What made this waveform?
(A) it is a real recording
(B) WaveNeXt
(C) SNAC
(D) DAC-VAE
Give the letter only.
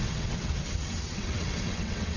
B